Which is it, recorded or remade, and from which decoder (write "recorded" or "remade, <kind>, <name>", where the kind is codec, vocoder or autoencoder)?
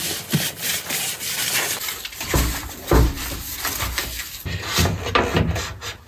recorded